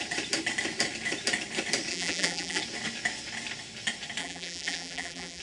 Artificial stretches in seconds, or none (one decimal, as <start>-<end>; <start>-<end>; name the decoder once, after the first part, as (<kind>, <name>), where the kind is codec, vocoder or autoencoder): 1.9-2.6 (vocoder, BigVGAN v2); 4.2-5.4